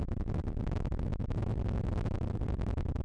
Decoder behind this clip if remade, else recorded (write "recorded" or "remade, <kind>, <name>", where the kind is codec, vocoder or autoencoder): recorded